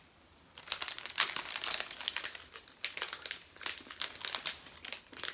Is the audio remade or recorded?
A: recorded